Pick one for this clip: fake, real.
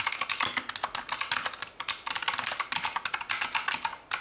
real